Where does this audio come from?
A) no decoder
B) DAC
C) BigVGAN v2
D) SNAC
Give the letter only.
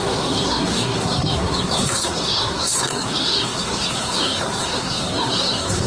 D